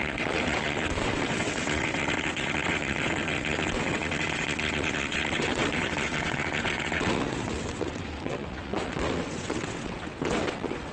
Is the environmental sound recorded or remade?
remade